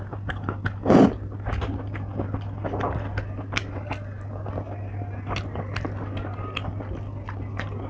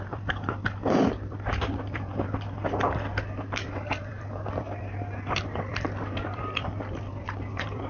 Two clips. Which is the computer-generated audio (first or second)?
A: second